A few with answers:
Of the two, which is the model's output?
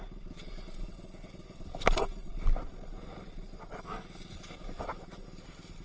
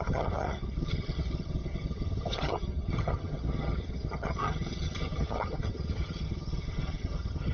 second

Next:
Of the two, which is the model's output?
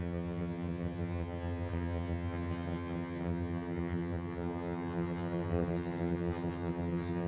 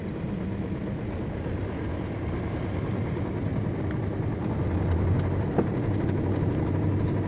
first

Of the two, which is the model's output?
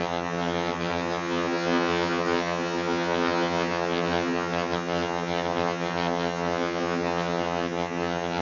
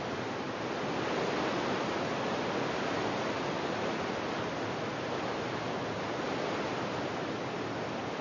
first